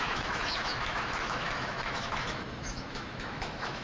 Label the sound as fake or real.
fake